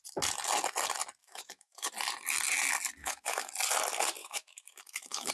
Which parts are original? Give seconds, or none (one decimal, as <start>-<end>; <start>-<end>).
0.0-1.2; 1.9-3.0; 3.5-4.2